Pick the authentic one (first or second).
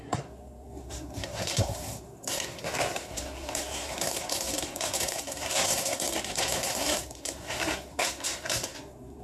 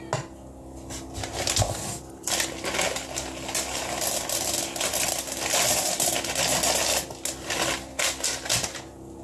second